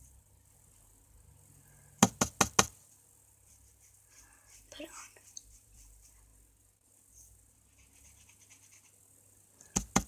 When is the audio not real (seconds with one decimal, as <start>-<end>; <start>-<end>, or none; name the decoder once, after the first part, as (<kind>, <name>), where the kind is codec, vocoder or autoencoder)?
0.0-2.0 (vocoder, BigVGAN v2); 3.5-6.3